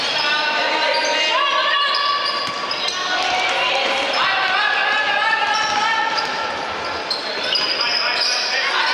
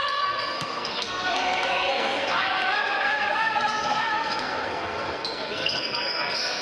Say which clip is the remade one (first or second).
second